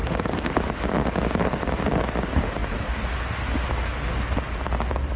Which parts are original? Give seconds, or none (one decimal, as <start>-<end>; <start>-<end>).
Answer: 0.6-5.2